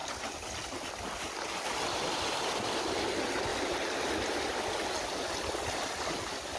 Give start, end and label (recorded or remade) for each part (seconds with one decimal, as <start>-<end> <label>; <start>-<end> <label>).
0.0-6.6 recorded